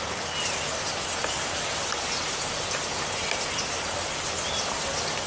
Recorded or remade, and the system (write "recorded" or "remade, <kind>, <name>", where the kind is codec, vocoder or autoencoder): recorded